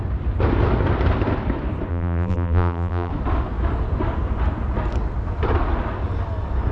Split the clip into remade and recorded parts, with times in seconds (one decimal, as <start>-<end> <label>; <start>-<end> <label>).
0.0-1.9 recorded; 1.9-3.1 remade; 3.1-6.7 recorded